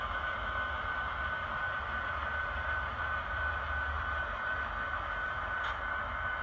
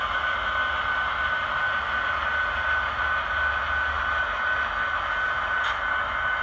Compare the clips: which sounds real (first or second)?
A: second